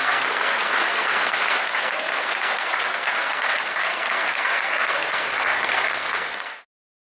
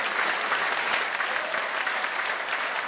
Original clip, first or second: second